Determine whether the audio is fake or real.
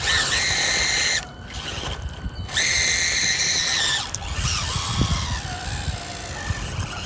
fake